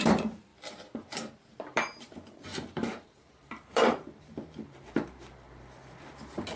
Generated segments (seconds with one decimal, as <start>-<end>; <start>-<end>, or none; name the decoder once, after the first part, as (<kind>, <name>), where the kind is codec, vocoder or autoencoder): 0.0-0.5 (vocoder, BigVGAN v2); 1.6-6.6